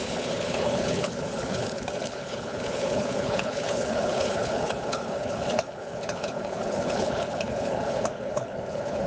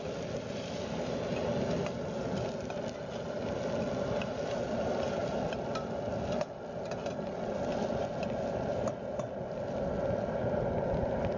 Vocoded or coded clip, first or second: first